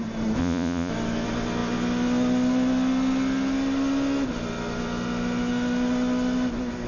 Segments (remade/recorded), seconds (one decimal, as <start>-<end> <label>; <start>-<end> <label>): 0.0-0.4 recorded; 0.4-0.9 remade; 0.9-6.9 recorded